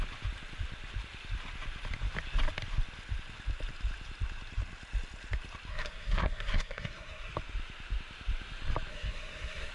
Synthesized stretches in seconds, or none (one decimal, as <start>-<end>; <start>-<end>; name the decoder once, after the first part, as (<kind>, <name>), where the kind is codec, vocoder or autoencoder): 5.7-7.3 (codec, SNAC); 8.9-9.7